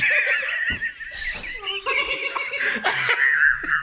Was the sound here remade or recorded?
recorded